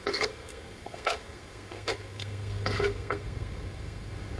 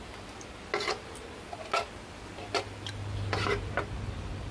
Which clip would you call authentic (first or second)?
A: second